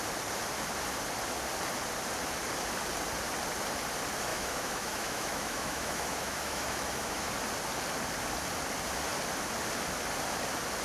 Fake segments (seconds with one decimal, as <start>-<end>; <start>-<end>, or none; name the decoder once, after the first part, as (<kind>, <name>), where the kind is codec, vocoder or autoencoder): 4.3-7.3 (autoencoder, DAC-VAE)